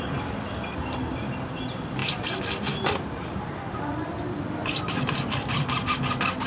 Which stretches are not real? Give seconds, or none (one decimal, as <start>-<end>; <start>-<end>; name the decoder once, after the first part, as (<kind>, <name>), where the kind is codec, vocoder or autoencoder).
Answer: 2.0-5.9 (vocoder, BigVGAN v2)